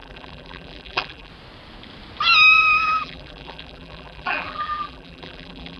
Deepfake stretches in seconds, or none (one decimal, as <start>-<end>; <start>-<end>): 0.0-1.3; 2.8-5.8